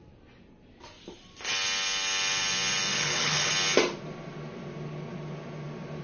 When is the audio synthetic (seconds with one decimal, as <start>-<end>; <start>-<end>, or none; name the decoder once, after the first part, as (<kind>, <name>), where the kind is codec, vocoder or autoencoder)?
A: 2.9-3.5 (codec, HILCodec)